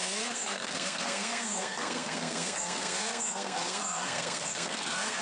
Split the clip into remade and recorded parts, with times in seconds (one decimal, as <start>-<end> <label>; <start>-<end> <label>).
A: 0.0-5.2 remade